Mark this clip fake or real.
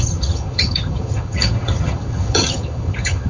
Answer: fake